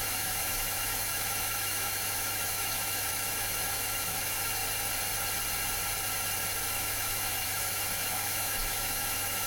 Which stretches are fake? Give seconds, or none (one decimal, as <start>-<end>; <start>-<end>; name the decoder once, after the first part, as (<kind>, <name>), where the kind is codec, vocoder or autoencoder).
0.0-4.6 (autoencoder, DAC-VAE); 6.7-9.5